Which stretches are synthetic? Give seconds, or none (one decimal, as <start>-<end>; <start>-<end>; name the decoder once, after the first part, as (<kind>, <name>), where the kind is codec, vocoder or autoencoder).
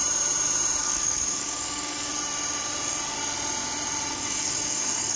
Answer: 0.8-2.1 (codec, DAC); 4.1-5.2